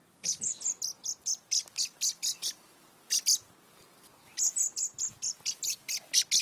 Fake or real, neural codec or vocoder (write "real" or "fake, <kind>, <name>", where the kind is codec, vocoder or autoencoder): real